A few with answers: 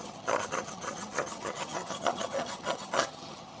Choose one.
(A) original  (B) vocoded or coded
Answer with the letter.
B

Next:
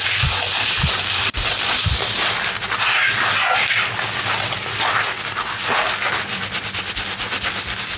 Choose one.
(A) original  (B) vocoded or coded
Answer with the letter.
A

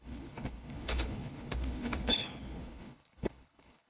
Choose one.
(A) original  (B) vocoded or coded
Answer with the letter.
B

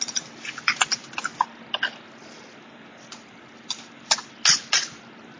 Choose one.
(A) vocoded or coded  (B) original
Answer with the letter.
B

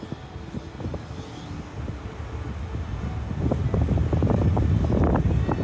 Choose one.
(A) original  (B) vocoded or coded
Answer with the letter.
A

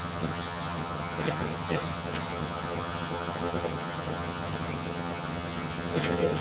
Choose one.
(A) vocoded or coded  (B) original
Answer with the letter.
A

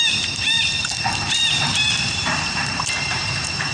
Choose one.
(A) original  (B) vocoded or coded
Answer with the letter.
B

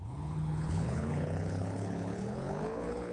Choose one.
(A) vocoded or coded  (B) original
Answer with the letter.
A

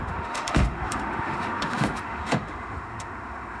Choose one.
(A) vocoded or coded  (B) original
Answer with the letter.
A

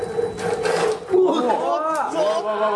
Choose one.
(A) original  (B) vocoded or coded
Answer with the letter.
A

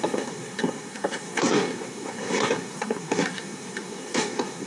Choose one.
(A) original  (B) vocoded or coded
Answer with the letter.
B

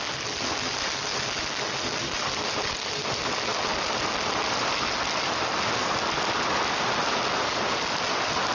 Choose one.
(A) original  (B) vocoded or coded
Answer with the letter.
A